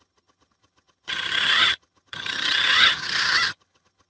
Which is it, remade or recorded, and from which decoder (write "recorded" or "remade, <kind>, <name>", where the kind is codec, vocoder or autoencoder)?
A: remade, vocoder, HiFi-GAN